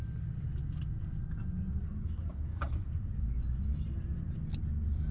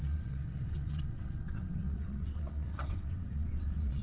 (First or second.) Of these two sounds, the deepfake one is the second